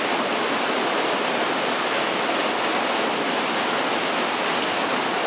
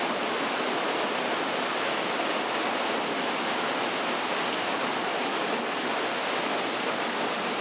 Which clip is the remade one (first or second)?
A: first